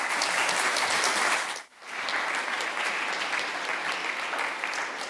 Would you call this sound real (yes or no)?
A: yes